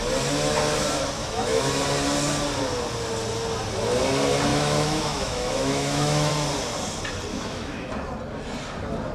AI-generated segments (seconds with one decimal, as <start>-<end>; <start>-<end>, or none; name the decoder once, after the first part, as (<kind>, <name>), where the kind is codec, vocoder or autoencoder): 1.2-1.8 (autoencoder, DAC-VAE); 4.5-6.3; 7.3-7.9